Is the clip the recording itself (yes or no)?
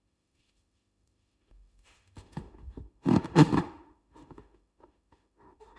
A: no